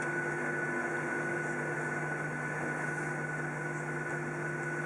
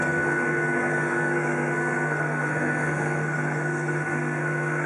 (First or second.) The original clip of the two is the first